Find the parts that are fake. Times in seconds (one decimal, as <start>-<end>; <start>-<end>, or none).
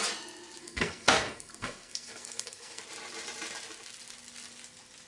0.6-2.8